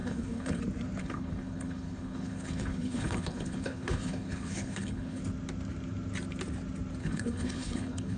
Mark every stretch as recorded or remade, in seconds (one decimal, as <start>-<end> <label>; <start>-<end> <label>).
0.0-0.6 remade; 0.6-1.0 recorded; 1.0-5.2 remade; 5.2-7.0 recorded; 7.0-8.2 remade